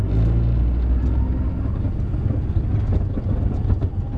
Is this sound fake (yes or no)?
no